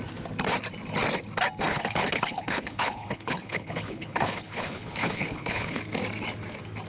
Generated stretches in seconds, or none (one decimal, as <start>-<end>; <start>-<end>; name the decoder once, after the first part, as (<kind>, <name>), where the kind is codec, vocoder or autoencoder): 1.7-5.8 (codec, HILCodec)